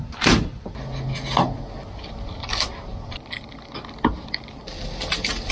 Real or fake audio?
real